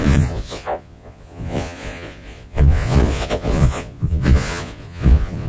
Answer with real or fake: fake